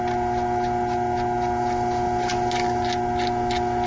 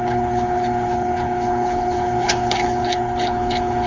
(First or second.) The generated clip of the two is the second